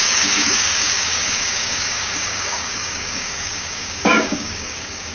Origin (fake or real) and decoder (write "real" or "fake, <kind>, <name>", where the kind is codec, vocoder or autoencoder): fake, codec, DAC